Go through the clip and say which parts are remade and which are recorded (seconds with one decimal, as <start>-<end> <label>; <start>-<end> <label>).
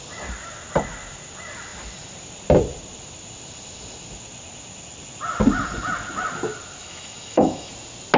0.0-6.8 recorded; 6.8-7.7 remade; 7.7-8.2 recorded